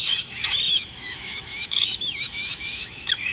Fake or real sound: fake